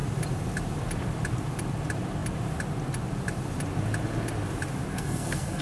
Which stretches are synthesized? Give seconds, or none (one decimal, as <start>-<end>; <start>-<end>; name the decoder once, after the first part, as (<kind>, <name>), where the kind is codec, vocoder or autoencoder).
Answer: 4.9-5.6 (codec, SNAC)